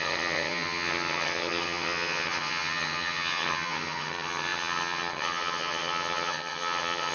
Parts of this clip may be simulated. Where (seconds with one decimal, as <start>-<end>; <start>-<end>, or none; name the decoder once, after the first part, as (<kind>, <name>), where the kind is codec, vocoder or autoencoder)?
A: 0.0-7.1 (vocoder, HiFi-GAN)